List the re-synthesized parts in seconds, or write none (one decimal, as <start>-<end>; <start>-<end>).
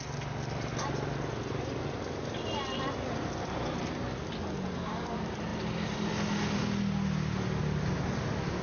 none